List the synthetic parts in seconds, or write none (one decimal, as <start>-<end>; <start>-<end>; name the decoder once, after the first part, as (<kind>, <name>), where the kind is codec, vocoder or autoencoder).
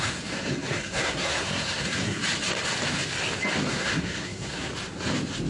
0.0-2.2 (codec, SNAC); 3.7-4.7